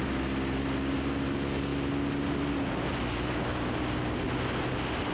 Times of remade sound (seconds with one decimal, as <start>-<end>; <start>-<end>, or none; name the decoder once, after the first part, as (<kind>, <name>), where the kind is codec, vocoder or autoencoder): none